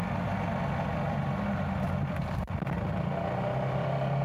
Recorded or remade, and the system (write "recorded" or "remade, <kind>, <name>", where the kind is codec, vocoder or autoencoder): recorded